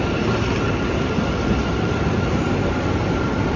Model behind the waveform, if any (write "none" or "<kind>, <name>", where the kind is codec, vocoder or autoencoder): vocoder, BigVGAN v2